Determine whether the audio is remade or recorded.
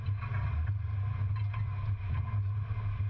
recorded